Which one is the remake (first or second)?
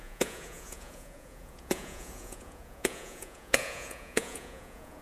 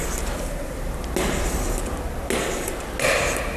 first